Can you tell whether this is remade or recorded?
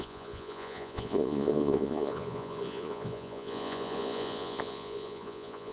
remade